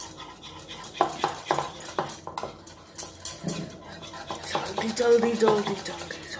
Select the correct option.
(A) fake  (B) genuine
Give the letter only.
B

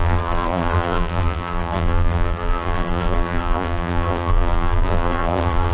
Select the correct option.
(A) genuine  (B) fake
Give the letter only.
B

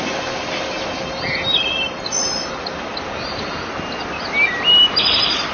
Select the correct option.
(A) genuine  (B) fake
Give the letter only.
A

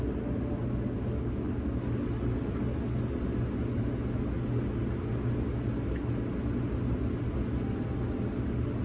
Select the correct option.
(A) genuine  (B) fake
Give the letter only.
A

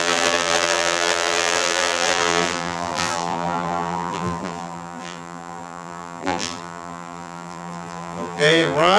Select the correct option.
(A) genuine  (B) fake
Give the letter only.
B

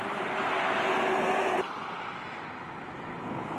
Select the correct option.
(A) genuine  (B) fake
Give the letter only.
A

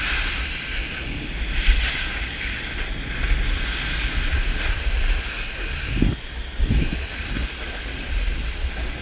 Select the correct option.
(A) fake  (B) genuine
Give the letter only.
B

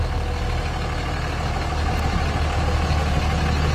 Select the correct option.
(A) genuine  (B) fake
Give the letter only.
A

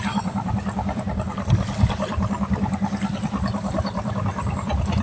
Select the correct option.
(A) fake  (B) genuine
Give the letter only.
A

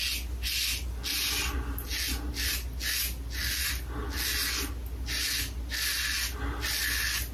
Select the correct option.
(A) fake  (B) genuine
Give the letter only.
B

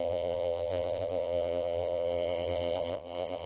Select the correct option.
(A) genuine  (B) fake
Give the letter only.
B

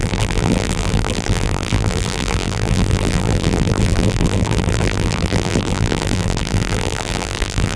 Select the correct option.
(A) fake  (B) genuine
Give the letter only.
A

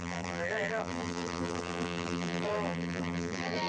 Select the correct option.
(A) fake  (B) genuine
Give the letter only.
A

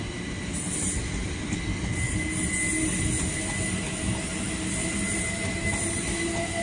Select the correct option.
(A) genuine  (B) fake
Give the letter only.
A